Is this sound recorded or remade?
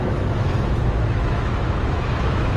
remade